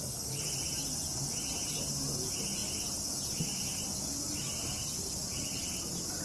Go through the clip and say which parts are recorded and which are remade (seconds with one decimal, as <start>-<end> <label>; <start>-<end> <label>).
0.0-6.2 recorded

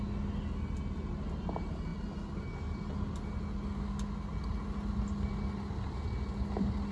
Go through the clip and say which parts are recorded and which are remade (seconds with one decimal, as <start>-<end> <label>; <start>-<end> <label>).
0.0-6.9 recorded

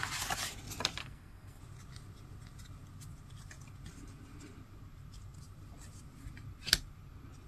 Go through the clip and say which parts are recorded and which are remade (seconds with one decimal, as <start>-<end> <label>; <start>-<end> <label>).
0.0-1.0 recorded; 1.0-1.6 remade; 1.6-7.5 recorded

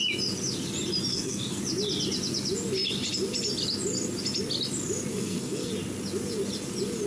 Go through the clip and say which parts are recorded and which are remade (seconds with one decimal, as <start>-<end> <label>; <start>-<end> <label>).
0.0-1.1 recorded; 1.1-1.6 remade; 1.6-5.1 recorded; 5.1-5.7 remade; 5.7-7.1 recorded

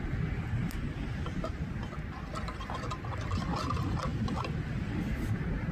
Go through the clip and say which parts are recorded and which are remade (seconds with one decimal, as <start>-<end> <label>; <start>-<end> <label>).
0.0-5.7 recorded

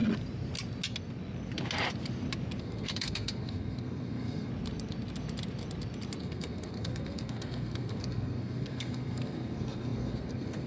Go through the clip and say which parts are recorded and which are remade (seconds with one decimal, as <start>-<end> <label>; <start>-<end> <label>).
0.0-2.6 recorded; 2.6-4.5 remade; 4.5-6.2 recorded; 6.2-10.7 remade

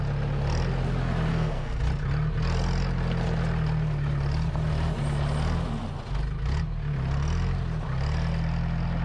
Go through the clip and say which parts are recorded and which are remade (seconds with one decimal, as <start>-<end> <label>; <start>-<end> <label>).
0.0-1.3 recorded; 1.3-1.8 remade; 1.8-9.0 recorded